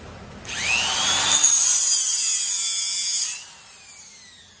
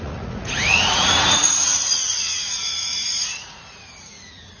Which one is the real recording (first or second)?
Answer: first